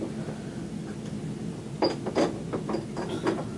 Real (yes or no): yes